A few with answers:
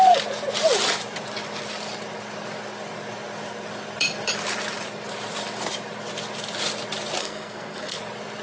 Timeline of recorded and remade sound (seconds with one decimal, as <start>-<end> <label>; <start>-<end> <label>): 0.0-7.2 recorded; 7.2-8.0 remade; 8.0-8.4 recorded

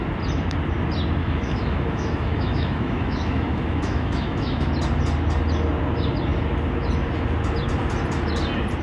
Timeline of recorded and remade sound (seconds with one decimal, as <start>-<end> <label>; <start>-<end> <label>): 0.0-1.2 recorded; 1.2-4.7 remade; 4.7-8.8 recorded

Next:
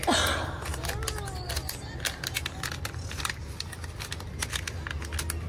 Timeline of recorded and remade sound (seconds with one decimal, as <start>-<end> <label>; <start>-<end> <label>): 0.0-5.5 recorded

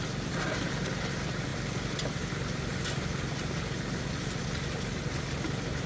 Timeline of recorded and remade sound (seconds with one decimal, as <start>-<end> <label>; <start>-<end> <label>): 0.0-5.9 recorded

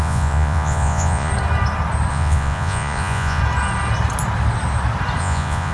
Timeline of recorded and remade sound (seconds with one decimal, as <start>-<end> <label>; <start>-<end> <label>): 0.0-1.3 remade; 1.3-2.1 recorded; 2.1-3.4 remade; 3.4-5.2 recorded; 5.2-5.7 remade